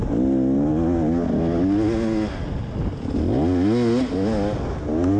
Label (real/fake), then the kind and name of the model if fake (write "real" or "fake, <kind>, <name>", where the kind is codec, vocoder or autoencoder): real